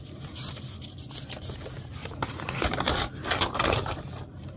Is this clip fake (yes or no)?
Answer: no